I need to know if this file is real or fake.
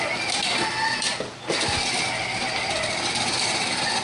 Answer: real